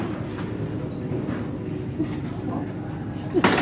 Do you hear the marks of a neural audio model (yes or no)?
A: no